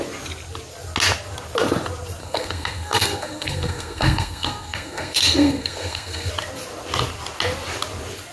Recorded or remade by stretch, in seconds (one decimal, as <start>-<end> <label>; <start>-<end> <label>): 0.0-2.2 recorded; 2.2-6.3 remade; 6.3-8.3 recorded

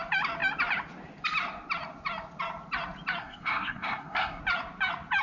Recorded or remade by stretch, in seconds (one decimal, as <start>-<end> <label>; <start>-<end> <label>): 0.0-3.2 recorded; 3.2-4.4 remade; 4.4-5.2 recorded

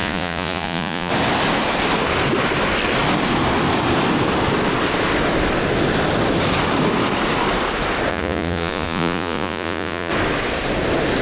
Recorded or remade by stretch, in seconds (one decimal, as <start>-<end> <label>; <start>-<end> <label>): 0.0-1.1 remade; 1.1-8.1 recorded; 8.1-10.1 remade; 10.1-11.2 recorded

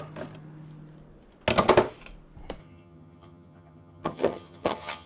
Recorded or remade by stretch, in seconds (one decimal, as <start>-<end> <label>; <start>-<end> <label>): 0.0-2.6 recorded; 2.6-5.1 remade

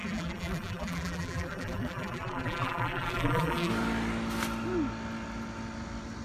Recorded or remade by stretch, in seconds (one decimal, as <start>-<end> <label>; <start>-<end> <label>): 0.0-3.7 remade; 3.7-6.2 recorded

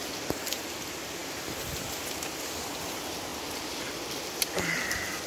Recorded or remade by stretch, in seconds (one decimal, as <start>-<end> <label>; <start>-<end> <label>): 0.0-5.3 recorded

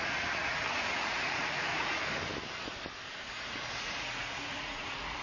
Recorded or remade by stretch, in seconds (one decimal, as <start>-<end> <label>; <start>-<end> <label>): 0.0-2.0 remade; 2.0-3.3 recorded; 3.3-5.2 remade

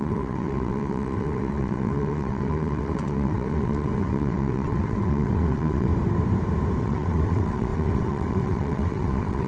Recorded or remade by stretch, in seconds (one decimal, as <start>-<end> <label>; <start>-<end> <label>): 0.0-5.9 remade; 5.9-6.8 recorded; 6.8-9.5 remade